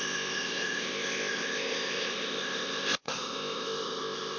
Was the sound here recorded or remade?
remade